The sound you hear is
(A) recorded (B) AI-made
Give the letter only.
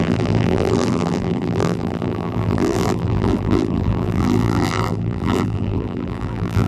B